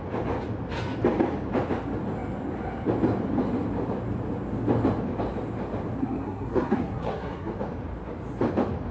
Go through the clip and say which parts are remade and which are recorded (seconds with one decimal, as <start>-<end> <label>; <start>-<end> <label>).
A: 0.0-6.0 recorded; 6.0-7.6 remade; 7.6-8.9 recorded